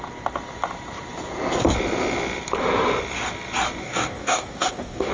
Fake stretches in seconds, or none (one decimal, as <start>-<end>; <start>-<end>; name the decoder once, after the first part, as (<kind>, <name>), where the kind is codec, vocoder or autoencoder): 3.8-5.1 (codec, DAC)